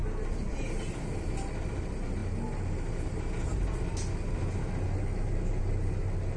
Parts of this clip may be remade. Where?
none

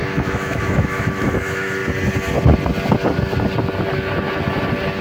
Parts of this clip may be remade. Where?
0.0-1.8 (autoencoder, DAC-VAE)

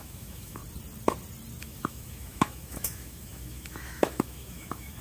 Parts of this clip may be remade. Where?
0.0-0.6 (autoencoder, DAC-VAE); 1.6-5.0

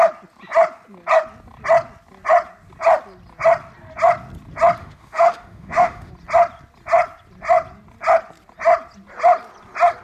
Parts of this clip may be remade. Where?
4.8-6.1 (autoencoder, DAC-VAE)